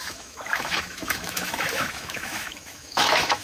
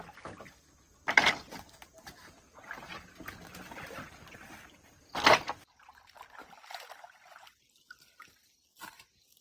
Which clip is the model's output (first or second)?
first